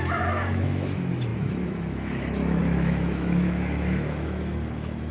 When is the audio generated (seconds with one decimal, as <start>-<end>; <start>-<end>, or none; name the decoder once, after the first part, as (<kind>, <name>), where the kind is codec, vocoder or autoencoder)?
0.0-5.1 (autoencoder, DAC-VAE)